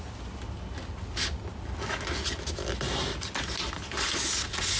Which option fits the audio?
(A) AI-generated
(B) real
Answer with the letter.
B